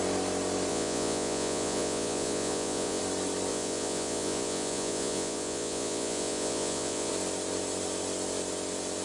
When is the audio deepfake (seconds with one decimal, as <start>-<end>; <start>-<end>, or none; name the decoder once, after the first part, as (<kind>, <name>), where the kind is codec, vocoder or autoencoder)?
0.7-3.0 (vocoder, Vocos); 3.5-7.1